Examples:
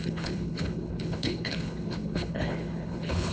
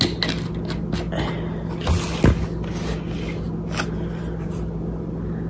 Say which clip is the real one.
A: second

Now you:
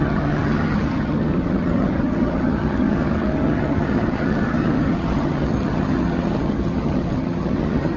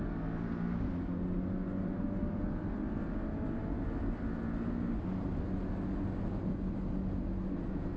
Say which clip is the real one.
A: second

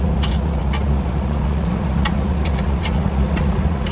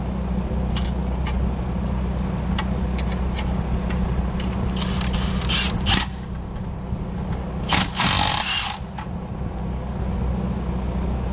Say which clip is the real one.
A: second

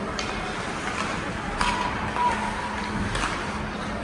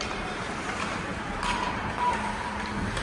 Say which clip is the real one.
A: first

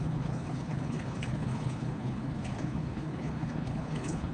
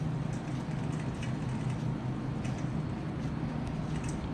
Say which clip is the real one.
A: second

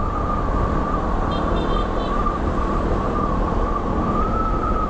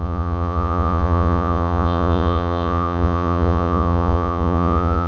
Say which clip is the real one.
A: first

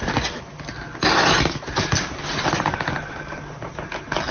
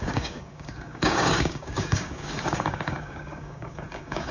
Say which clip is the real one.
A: first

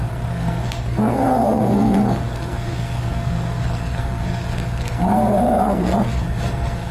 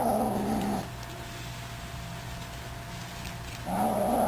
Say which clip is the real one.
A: second